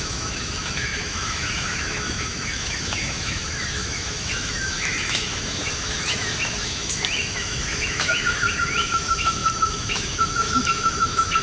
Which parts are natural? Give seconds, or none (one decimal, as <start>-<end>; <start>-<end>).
none